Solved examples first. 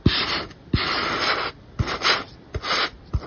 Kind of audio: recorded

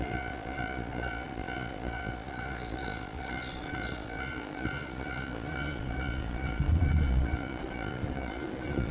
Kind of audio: remade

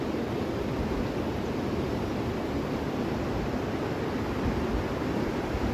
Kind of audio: recorded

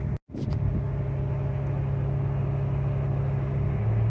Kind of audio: recorded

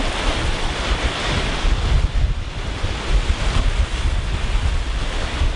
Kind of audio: recorded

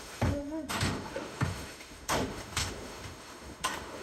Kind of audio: remade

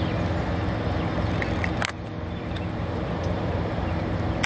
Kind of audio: recorded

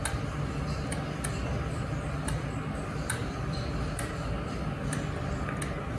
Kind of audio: recorded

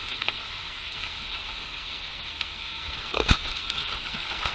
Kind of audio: remade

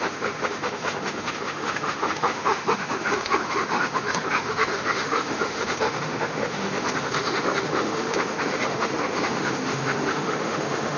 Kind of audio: remade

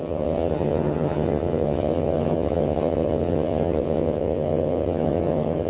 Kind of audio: remade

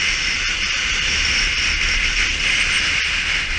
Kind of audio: recorded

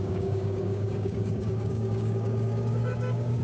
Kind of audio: remade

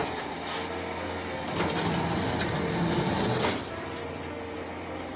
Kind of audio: recorded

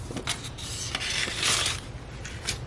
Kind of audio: recorded